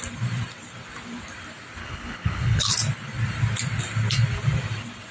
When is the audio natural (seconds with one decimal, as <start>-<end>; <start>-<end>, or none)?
0.0-1.8; 2.6-5.1